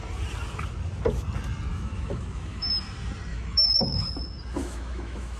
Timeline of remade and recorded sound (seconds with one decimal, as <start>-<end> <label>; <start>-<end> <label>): 0.0-1.7 recorded; 1.7-2.7 remade; 2.7-3.3 recorded; 3.3-4.0 remade; 4.0-4.6 recorded; 4.6-5.4 remade